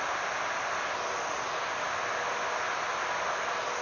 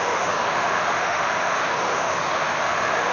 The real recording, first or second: first